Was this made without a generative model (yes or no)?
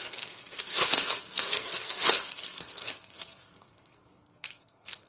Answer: no